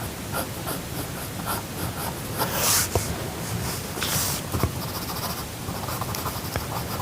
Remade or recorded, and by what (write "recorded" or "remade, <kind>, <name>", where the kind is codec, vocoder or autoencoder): recorded